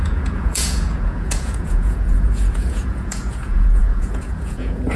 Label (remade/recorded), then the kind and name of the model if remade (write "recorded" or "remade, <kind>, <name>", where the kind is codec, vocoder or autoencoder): remade, vocoder, Vocos